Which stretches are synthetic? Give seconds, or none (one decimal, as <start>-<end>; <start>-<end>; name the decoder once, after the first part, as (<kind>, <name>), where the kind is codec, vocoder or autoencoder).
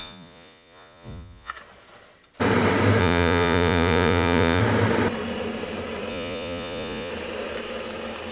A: 0.0-1.5 (vocoder, Vocos); 3.0-4.6; 6.1-7.1